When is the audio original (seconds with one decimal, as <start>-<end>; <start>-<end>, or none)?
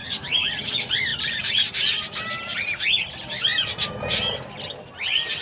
0.5-5.4